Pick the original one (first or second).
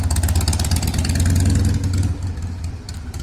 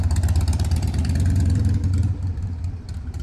first